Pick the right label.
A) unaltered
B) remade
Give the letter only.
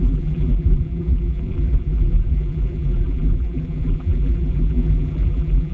B